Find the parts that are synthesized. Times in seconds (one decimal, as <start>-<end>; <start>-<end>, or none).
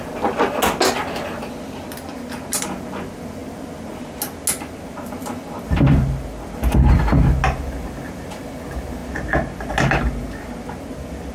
none